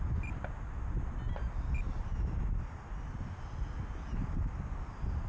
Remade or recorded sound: recorded